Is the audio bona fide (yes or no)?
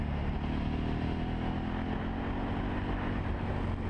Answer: yes